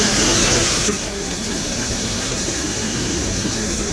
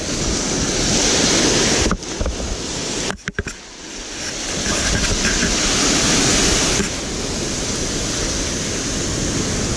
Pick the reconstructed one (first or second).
first